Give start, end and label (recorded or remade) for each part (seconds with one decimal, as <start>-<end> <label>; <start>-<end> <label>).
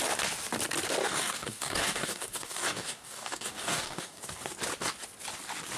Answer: 0.0-1.0 recorded; 1.0-4.2 remade; 4.2-5.8 recorded